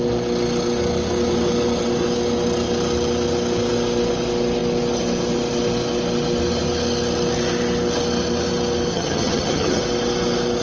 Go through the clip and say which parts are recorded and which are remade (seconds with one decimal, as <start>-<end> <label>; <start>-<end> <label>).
0.0-8.9 recorded; 8.9-9.8 remade; 9.8-10.6 recorded